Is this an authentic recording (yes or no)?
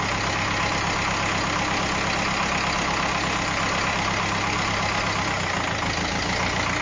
yes